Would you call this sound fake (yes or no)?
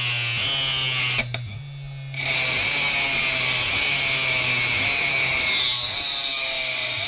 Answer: no